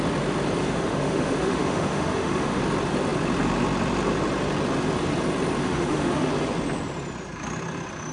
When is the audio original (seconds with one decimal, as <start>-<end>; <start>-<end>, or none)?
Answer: 0.0-0.6; 2.6-5.6; 6.3-8.1